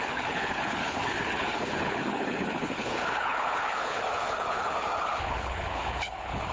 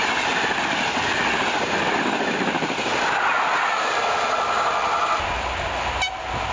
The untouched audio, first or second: second